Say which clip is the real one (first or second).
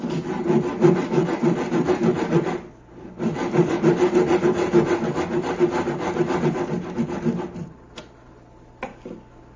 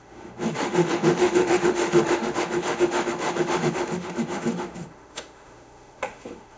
first